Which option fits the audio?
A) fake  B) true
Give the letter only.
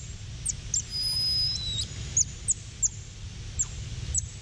B